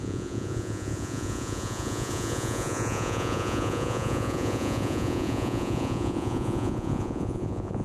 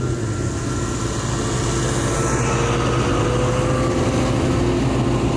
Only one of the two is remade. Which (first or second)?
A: first